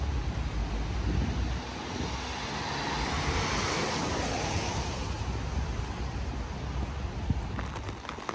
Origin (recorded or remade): recorded